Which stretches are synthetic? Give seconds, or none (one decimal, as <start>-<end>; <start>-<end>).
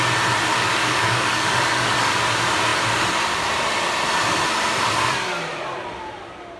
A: 0.5-2.2